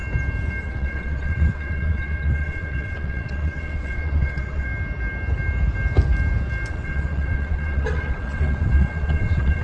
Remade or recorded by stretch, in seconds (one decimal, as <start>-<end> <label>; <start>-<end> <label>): 0.0-0.6 recorded; 0.6-4.7 remade; 4.7-6.7 recorded; 6.7-9.6 remade